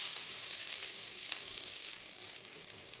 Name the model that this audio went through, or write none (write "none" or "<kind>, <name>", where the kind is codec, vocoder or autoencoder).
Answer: codec, DAC